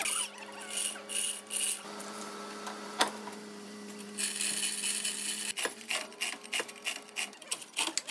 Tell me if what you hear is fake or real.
real